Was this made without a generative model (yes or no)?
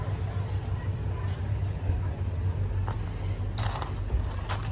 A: yes